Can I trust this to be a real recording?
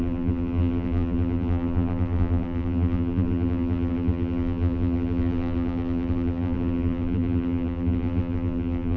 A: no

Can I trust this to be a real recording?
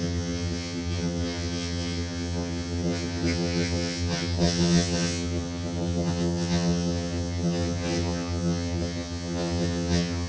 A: no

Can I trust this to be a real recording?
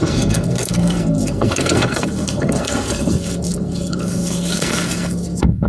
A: no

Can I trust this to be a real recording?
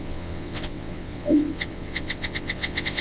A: no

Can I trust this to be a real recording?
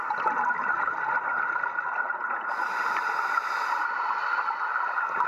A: yes